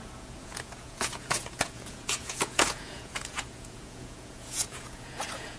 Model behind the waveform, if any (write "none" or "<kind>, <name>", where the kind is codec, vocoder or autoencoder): vocoder, Vocos